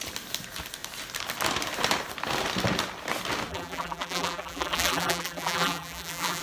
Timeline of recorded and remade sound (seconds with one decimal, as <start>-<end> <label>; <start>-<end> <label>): 0.0-3.5 recorded; 3.5-6.4 remade